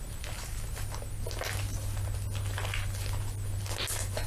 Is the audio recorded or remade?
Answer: recorded